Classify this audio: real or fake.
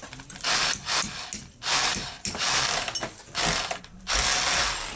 real